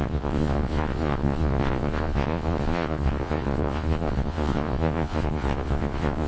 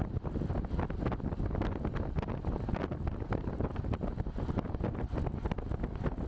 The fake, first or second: first